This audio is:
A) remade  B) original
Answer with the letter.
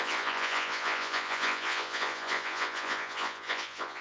A